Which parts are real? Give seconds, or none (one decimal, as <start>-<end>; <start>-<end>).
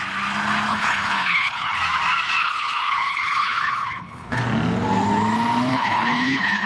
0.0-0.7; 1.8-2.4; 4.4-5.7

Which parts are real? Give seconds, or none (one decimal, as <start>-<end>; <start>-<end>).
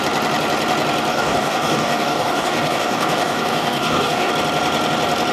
0.0-1.1; 4.3-5.3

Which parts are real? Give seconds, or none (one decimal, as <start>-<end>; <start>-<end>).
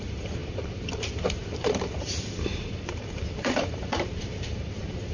none